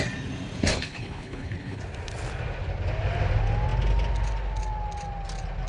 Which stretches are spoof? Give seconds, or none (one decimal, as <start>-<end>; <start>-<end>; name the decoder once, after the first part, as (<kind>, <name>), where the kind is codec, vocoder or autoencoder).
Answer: 0.7-1.8 (codec, HILCodec)